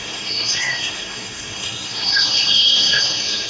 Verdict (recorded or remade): remade